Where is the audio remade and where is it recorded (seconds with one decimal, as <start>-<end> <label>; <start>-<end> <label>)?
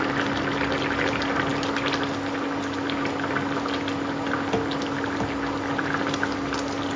0.0-7.0 recorded